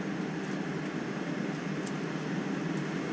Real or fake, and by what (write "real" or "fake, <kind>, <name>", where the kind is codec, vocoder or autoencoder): real